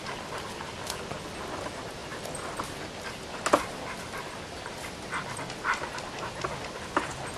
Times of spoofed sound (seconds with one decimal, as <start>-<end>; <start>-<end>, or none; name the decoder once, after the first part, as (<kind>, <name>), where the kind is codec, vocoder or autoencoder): none